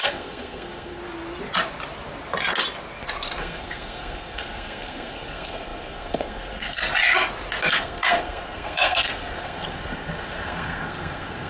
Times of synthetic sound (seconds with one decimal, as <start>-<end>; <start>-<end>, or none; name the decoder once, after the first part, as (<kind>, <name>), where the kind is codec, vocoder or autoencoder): 0.0-1.0 (codec, SNAC); 3.4-6.8; 7.7-11.5